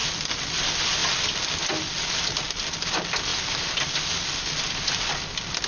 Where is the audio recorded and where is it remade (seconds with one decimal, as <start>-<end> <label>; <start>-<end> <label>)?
0.0-5.7 recorded